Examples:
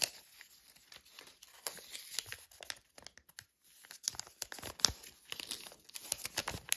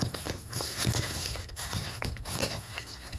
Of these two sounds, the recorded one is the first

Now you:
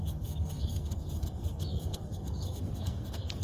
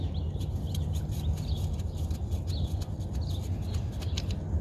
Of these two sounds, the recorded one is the second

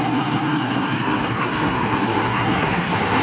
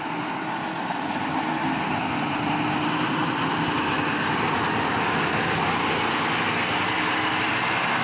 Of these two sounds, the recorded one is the second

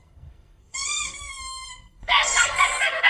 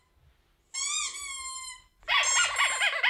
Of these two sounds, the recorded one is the second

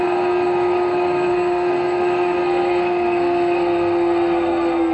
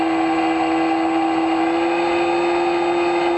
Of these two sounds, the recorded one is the second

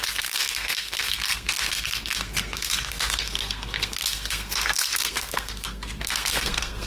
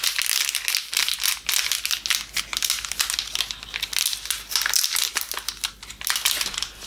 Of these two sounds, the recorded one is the second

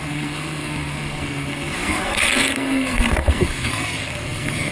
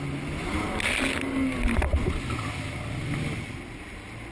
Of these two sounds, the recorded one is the second